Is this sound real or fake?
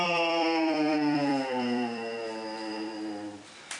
fake